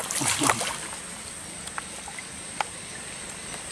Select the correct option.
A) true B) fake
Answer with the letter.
A